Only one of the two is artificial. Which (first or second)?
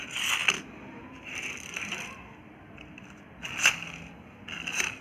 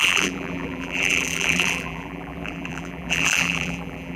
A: second